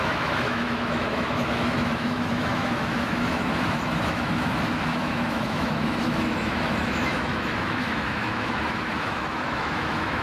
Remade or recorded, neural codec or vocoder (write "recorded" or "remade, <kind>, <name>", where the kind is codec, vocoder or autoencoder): remade, autoencoder, DAC-VAE